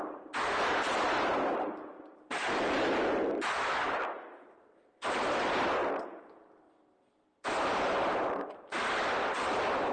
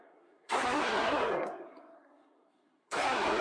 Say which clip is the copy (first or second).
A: second